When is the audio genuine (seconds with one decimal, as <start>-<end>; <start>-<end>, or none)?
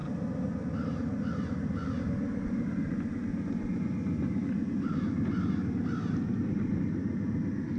0.0-7.8